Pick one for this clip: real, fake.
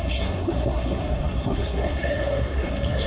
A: fake